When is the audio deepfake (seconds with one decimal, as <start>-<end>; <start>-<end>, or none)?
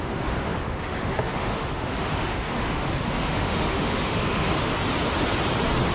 0.0-4.7